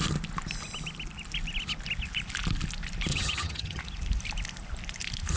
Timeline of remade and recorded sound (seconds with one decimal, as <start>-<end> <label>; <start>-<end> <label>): 0.0-3.1 recorded; 3.1-3.8 remade; 3.8-5.4 recorded